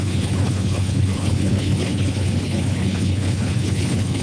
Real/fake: fake